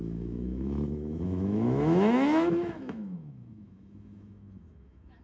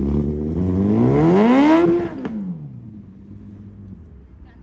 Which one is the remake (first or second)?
first